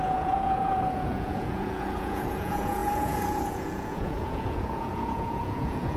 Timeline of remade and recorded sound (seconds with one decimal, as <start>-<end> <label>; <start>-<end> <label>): 0.0-6.0 remade